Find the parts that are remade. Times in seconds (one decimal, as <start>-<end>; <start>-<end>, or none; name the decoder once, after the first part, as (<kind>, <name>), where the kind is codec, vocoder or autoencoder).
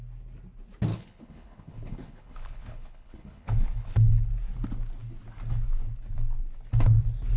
0.9-4.3 (codec, HILCodec)